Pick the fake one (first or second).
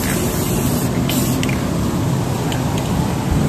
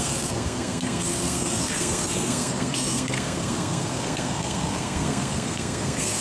second